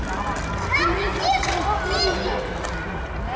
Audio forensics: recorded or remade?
recorded